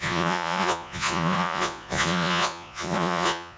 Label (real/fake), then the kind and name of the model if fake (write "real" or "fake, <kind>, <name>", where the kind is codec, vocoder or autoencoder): fake, vocoder, Vocos